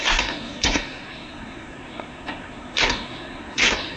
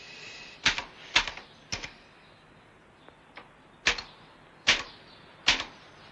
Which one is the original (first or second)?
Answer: second